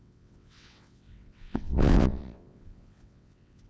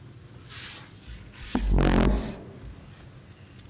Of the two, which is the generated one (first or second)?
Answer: first